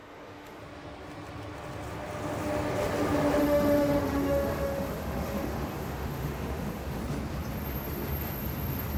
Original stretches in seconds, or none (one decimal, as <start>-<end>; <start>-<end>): 0.6-3.4; 7.0-9.0

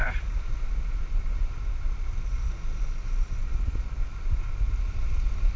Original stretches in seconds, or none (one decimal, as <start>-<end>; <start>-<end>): 0.0-5.6